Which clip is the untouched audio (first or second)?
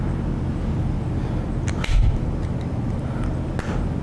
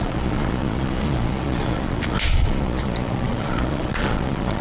first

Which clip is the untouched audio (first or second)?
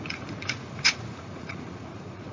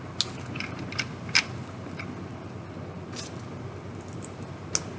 second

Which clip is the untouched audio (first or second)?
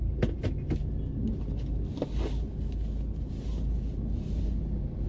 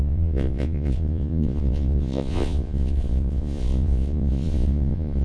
first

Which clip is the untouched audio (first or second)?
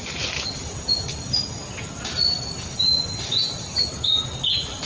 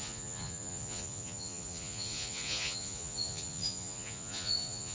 first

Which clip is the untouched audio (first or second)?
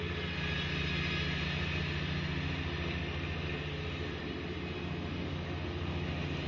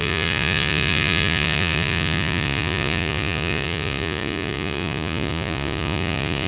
first